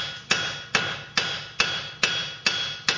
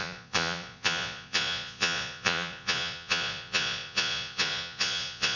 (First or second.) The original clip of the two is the first